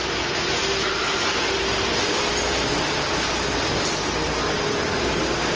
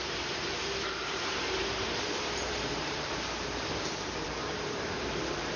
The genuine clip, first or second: first